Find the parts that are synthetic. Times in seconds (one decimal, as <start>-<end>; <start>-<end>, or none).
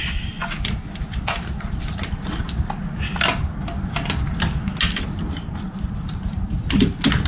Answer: none